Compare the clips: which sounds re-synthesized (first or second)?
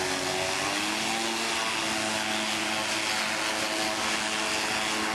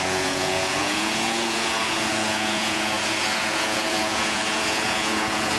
second